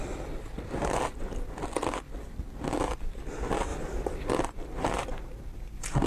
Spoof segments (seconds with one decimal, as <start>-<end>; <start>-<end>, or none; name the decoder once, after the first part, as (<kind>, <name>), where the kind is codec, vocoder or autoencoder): none